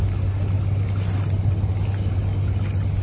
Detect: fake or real real